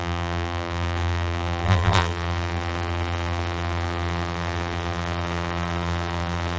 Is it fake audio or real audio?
fake